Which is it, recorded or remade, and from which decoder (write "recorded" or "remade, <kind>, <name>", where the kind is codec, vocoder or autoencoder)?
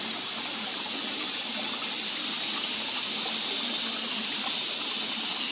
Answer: recorded